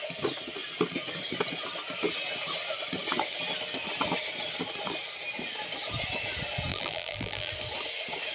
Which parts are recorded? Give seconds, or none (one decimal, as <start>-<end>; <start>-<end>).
0.0-6.7; 7.5-8.3